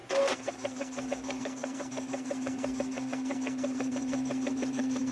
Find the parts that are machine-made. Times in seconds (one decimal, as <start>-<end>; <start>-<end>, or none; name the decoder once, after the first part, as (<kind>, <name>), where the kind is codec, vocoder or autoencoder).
0.0-5.1 (codec, SNAC)